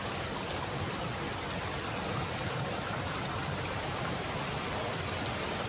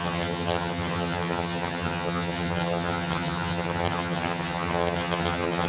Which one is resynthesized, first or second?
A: second